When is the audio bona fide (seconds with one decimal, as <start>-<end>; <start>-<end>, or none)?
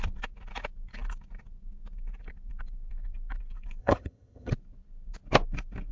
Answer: 0.0-3.8; 4.5-5.9